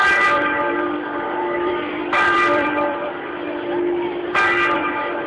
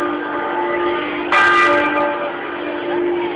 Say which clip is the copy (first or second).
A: first